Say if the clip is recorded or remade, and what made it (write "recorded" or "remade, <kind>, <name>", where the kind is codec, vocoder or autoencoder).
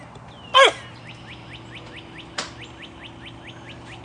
recorded